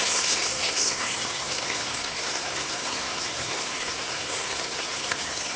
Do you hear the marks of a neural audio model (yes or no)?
yes